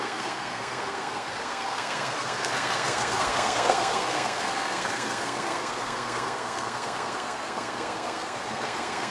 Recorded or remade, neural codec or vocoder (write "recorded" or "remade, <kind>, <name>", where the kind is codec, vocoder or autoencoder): remade, codec, SNAC